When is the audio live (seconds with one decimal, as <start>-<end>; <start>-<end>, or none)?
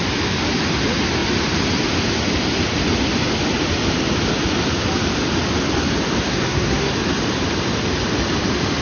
0.0-6.3; 6.9-8.8